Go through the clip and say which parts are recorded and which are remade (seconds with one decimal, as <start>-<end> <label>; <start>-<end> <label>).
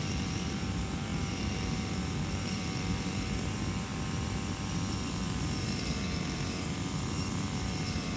0.0-8.2 remade